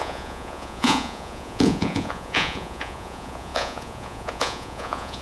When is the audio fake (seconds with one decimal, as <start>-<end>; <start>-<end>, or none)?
0.0-5.2